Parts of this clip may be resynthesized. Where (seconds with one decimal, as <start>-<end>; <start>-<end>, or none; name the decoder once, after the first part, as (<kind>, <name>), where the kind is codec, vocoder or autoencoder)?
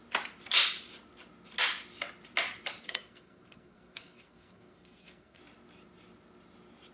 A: 2.8-5.4 (codec, SNAC)